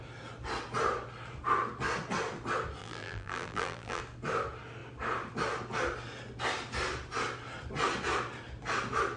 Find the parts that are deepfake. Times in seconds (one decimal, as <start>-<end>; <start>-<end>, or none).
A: 2.8-4.0